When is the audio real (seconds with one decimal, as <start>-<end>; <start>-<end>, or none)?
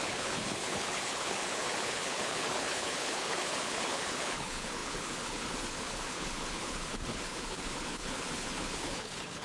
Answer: none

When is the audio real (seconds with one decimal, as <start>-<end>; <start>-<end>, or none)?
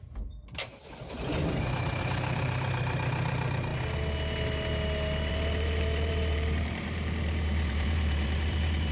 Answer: 1.3-2.0; 3.7-5.3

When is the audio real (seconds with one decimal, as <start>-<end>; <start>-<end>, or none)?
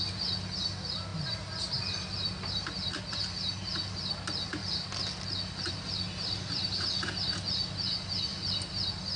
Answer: 0.0-9.2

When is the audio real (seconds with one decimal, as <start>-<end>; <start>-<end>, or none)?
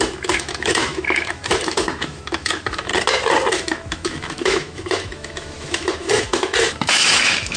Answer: 2.9-3.5